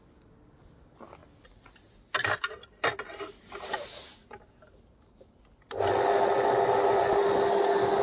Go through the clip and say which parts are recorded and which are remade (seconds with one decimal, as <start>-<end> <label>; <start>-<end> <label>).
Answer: 0.0-8.0 recorded